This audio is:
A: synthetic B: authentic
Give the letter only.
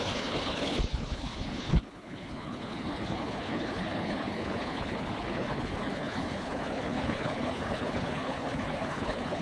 A